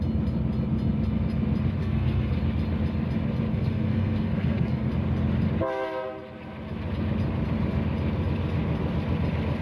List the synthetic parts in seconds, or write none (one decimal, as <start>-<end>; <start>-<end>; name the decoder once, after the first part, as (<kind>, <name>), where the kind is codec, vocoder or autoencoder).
1.8-2.4 (codec, SNAC); 3.5-4.9